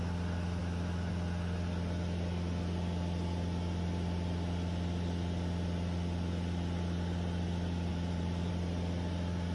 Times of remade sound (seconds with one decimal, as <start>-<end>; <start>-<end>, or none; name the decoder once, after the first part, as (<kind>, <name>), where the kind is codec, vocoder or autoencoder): 7.9-8.5 (vocoder, BigVGAN v2)